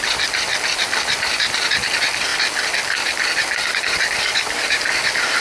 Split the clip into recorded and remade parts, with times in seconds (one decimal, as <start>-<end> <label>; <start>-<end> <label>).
0.0-0.5 remade; 0.5-1.0 recorded; 1.0-2.3 remade; 2.3-3.9 recorded; 3.9-5.4 remade